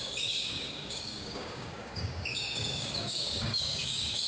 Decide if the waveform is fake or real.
fake